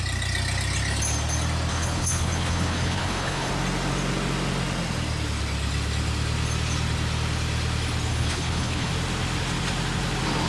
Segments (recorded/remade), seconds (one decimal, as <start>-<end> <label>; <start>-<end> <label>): 0.0-1.7 recorded; 1.7-3.5 remade; 3.5-8.1 recorded; 8.1-8.9 remade; 8.9-10.5 recorded